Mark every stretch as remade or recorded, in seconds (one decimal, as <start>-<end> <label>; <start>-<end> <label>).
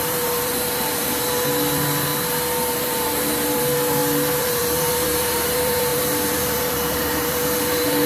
0.0-2.1 remade; 2.1-2.6 recorded; 2.6-8.1 remade